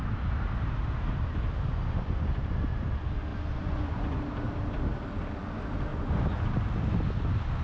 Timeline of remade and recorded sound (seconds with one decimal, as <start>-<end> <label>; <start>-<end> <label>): 0.0-1.7 recorded; 1.7-2.5 remade; 2.5-3.3 recorded; 3.3-4.2 remade; 4.2-5.9 recorded; 5.9-6.5 remade; 6.5-7.6 recorded